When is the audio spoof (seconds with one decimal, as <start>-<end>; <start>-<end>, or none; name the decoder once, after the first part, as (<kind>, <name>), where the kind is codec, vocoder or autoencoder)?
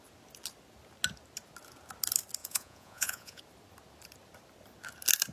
2.4-3.4 (vocoder, Vocos)